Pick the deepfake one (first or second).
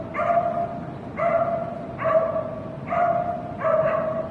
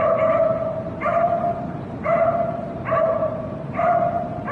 second